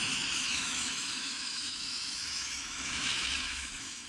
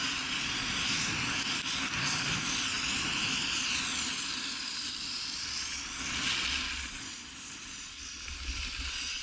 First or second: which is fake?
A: first